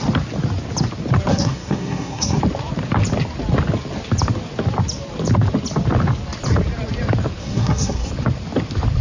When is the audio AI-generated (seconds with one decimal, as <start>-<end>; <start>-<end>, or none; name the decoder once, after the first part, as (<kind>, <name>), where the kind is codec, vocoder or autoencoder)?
1.3-2.4 (codec, SNAC); 7.4-8.1

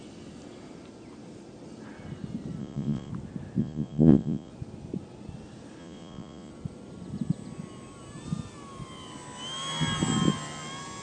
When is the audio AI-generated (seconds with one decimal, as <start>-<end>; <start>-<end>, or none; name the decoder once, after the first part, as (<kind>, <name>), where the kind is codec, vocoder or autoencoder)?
2.6-3.1 (vocoder, Vocos); 3.6-4.5; 5.8-6.5